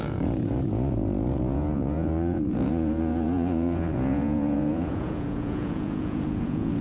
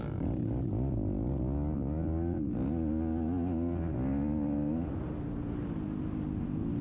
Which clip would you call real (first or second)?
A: second